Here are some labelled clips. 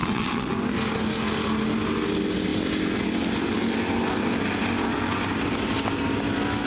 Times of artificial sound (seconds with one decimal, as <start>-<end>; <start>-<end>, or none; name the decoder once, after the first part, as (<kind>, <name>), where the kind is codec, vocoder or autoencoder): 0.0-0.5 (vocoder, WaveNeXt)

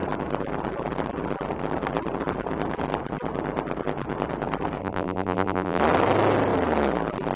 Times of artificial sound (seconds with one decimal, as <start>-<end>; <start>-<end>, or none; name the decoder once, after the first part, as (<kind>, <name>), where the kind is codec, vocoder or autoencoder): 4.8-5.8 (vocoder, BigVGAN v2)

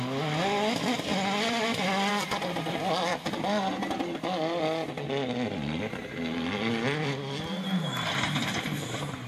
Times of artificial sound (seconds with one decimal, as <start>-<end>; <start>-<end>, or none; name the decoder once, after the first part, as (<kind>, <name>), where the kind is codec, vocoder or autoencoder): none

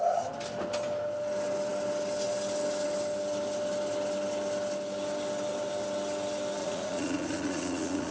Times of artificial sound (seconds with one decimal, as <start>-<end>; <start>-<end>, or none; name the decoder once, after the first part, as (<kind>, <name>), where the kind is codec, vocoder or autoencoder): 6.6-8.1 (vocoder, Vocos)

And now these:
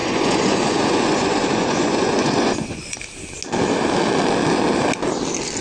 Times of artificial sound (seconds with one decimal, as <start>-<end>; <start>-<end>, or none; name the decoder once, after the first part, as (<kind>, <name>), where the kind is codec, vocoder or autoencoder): 0.0-3.0 (vocoder, Vocos)